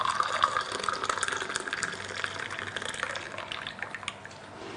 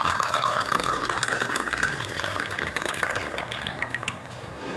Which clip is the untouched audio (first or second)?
first